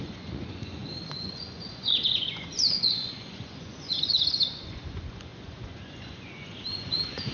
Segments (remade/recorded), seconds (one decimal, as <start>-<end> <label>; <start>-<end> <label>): 0.0-7.3 remade